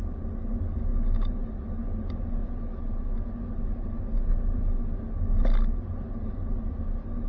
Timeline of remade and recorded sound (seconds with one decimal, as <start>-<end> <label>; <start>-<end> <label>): 0.0-7.3 recorded